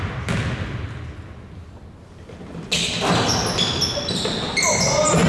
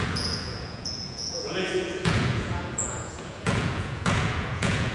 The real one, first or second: first